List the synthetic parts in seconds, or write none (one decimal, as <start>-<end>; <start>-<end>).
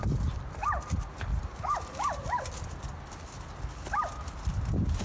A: 1.3-2.7